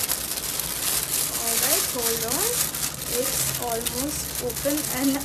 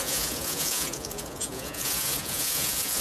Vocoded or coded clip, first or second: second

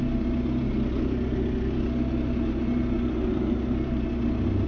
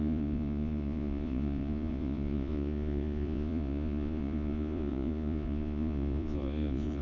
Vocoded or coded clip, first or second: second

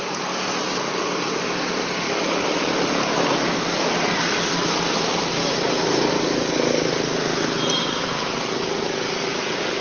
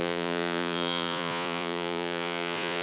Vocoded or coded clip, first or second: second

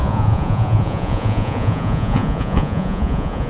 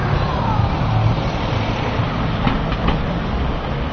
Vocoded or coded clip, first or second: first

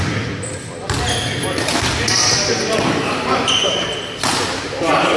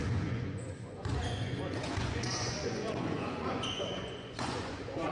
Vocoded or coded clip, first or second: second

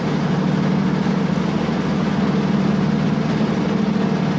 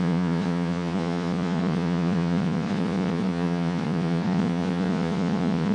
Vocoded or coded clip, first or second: second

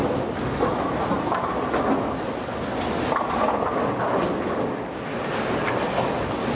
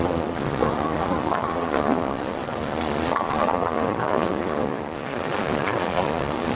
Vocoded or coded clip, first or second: second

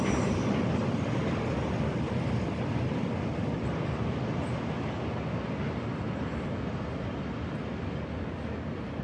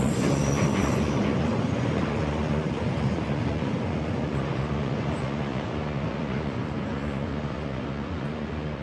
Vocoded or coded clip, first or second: second